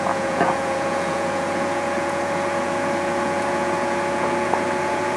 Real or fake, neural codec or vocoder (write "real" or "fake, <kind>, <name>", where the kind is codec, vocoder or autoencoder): fake, vocoder, Vocos